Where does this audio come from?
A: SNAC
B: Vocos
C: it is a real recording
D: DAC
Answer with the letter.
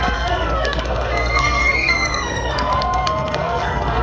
A